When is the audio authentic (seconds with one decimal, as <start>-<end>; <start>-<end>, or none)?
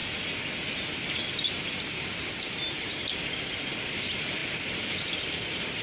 0.0-1.8